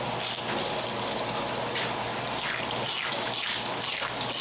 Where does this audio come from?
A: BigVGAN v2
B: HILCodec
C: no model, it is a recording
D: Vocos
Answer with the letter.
C